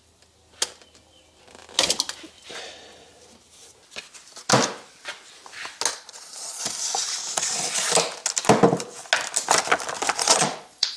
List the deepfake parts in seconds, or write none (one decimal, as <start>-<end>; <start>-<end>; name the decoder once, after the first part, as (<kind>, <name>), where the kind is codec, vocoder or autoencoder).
5.9-6.6 (vocoder, Vocos); 10.2-11.0